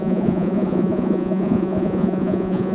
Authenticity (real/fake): fake